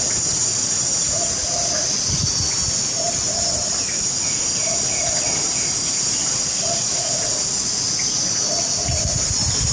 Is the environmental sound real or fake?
real